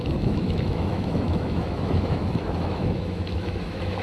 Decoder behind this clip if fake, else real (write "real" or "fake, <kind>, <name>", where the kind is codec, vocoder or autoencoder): fake, autoencoder, DAC-VAE